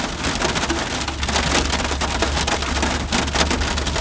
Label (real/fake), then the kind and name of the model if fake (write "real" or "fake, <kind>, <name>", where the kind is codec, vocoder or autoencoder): real